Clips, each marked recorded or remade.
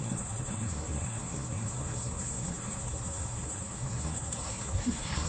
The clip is remade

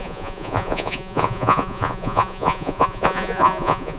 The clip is remade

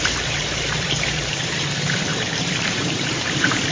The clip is remade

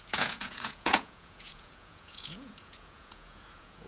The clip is remade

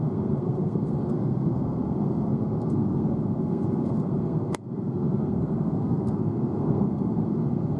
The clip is remade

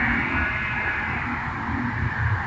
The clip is remade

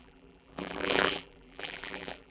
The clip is remade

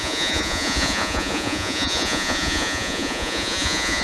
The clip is remade